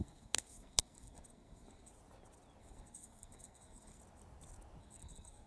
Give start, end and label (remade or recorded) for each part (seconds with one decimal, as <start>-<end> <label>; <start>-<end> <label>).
0.0-1.9 remade; 1.9-2.6 recorded; 2.6-4.0 remade; 4.0-4.8 recorded; 4.8-5.5 remade